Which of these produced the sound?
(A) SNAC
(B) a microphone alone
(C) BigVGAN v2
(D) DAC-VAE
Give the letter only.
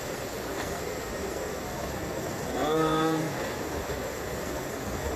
A